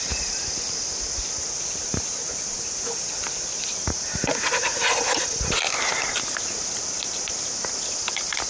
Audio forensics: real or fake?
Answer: real